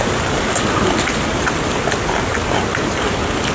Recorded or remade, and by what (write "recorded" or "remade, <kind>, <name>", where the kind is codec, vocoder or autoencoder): recorded